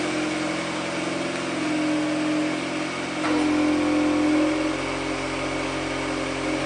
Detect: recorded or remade recorded